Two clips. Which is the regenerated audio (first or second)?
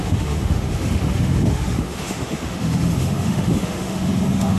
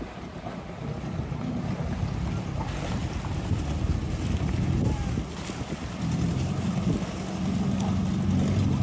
first